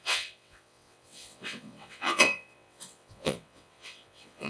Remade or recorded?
remade